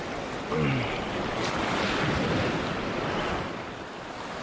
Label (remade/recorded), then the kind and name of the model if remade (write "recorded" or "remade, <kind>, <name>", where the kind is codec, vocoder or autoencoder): recorded